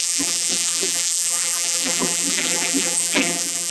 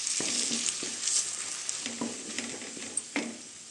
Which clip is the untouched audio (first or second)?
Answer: second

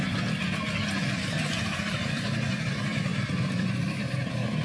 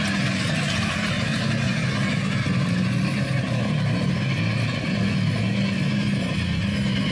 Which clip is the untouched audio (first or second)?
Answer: second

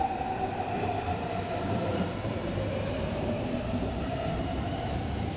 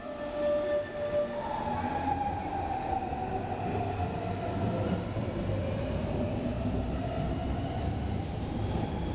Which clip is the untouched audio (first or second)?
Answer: second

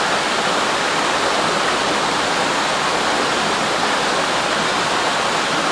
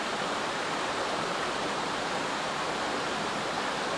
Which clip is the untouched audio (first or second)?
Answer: first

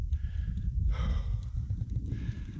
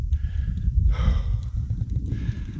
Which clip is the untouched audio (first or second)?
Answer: first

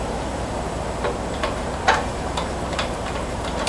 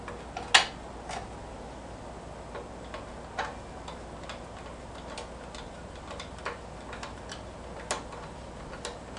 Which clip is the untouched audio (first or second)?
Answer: second